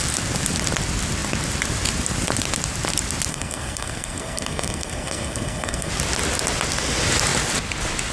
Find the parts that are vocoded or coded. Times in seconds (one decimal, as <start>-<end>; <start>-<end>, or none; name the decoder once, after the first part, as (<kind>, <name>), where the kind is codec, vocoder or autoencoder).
3.3-5.9 (codec, SNAC)